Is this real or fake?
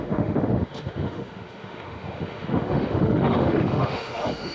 fake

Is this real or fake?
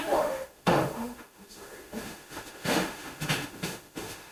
fake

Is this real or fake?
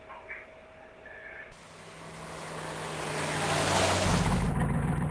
real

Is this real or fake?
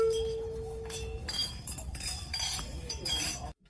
fake